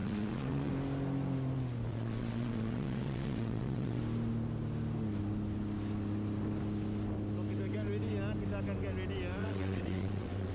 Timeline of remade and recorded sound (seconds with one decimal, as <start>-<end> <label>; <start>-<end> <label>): 0.0-0.7 remade; 0.7-1.9 recorded; 1.9-4.0 remade; 4.0-9.4 recorded; 9.4-10.5 remade